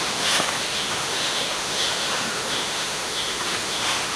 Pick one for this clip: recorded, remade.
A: remade